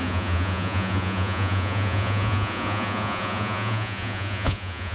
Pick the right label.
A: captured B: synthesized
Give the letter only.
B